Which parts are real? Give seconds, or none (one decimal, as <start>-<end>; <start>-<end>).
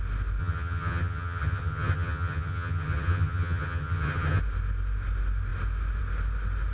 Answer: 0.0-0.4; 4.4-6.7